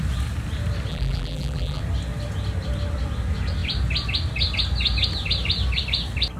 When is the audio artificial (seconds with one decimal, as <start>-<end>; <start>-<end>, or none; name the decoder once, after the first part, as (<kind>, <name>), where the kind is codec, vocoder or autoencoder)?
0.9-1.8 (vocoder, BigVGAN v2)